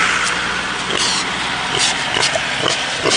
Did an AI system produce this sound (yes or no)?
no